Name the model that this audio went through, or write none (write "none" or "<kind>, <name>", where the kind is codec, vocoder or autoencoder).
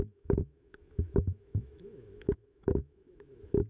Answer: autoencoder, DAC-VAE